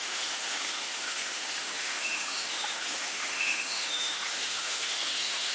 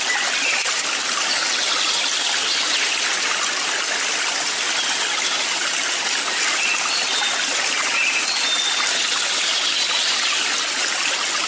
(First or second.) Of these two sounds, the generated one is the first